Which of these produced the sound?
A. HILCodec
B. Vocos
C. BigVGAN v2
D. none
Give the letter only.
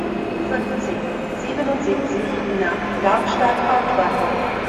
D